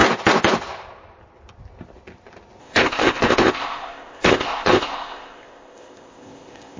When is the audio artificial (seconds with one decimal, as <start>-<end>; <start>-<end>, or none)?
2.6-6.8